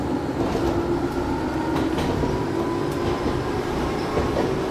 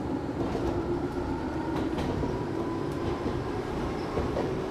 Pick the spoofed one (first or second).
second